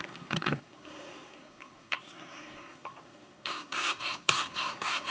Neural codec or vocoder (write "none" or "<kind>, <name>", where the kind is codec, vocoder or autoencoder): codec, SNAC